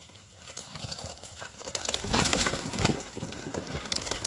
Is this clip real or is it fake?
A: fake